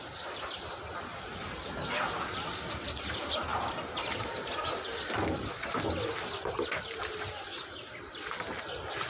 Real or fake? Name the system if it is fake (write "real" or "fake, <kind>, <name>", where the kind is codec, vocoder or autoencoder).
real